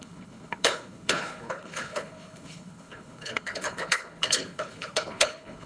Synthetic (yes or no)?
yes